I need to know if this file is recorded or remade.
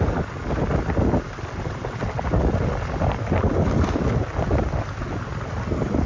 recorded